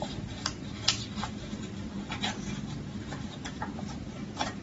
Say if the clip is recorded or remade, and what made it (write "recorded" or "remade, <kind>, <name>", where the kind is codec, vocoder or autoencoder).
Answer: recorded